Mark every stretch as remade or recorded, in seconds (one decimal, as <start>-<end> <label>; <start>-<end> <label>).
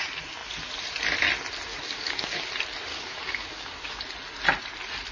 0.0-1.7 recorded; 1.7-2.5 remade; 2.5-2.9 recorded; 2.9-4.0 remade; 4.0-5.1 recorded